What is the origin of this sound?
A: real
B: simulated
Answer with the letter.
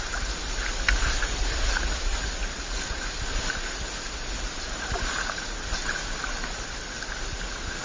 A